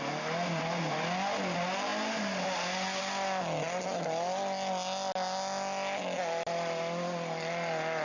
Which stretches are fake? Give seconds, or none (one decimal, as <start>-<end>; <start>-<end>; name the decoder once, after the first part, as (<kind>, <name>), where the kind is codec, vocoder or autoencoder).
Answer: none